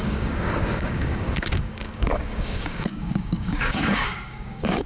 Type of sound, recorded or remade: remade